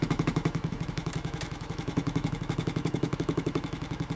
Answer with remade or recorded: remade